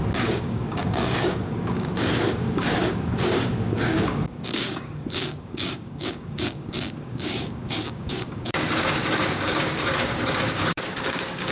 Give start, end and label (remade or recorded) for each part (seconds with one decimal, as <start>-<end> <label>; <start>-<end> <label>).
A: 0.0-11.5 remade